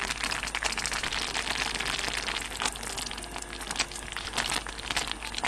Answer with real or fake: real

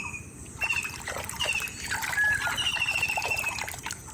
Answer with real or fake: real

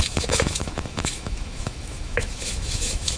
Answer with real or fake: fake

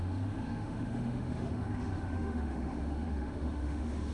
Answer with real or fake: fake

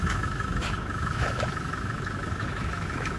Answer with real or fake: fake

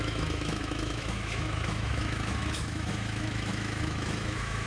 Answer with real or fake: fake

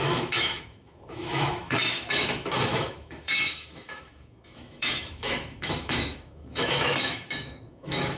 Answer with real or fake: fake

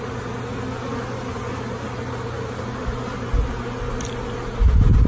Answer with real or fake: real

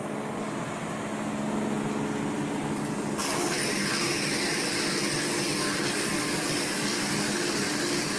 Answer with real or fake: real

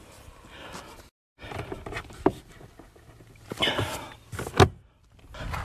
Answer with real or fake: real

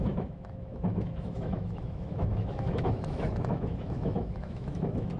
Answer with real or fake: fake